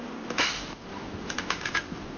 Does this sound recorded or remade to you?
recorded